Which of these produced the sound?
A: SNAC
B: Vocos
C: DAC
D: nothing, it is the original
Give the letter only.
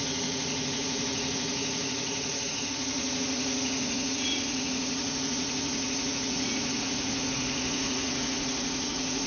B